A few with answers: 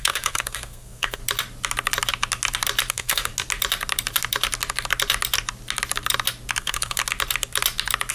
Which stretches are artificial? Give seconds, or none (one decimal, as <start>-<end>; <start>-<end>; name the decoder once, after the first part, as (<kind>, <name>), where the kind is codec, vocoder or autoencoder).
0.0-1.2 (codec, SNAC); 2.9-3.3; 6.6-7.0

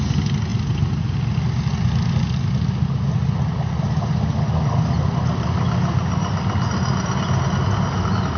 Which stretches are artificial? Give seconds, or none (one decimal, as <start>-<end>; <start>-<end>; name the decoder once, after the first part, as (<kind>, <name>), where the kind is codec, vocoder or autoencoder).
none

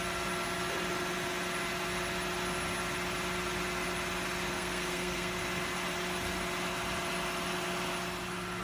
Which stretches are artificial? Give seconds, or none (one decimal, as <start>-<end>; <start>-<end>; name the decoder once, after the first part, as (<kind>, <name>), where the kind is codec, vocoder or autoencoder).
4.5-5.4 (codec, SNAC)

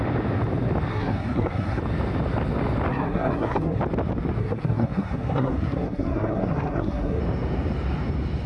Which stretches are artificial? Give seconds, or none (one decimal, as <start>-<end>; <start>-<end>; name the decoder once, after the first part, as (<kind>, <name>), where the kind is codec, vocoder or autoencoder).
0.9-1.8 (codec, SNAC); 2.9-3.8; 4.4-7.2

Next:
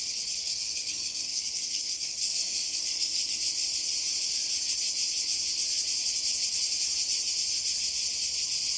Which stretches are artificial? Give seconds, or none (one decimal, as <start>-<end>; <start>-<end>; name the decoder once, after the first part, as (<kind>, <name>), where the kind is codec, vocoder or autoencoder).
0.4-3.4 (codec, SNAC)

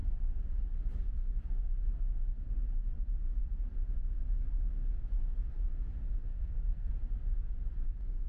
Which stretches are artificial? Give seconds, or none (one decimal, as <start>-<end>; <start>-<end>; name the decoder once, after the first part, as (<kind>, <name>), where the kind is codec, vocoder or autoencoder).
6.3-6.9 (codec, SNAC)

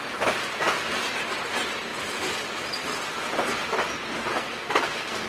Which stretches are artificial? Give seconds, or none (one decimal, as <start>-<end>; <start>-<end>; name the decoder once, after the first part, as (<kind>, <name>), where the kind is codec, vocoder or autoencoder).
4.3-5.3 (codec, SNAC)